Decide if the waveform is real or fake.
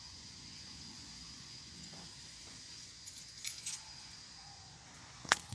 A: fake